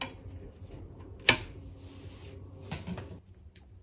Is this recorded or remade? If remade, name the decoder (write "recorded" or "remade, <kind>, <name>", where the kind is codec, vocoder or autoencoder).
recorded